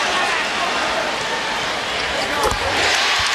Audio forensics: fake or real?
fake